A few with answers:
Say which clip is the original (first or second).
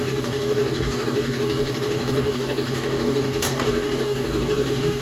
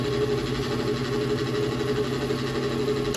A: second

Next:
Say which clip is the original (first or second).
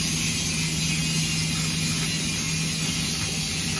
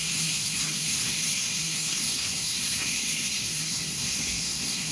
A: first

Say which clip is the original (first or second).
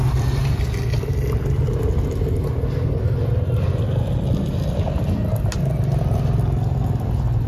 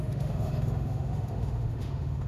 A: first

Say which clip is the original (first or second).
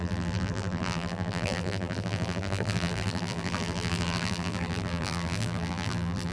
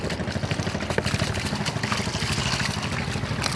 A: second